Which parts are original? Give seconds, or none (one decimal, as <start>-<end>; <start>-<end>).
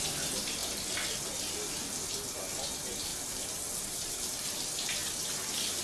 0.0-5.8